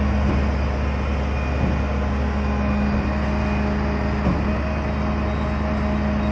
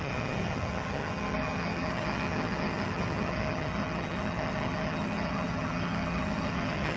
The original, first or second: first